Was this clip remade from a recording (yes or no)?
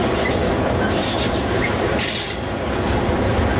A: yes